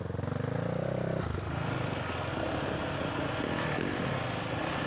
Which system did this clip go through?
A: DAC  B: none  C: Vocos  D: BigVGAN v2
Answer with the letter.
B